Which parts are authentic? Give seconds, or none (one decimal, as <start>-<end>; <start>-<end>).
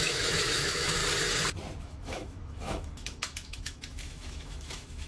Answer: 1.0-1.8